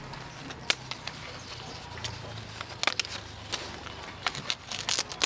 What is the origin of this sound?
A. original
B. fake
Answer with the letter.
A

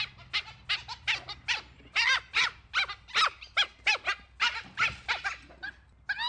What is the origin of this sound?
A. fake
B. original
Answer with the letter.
B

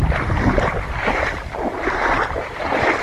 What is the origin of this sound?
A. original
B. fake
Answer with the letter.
B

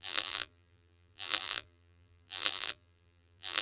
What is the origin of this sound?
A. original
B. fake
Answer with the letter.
B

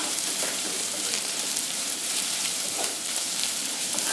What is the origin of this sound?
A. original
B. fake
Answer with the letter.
B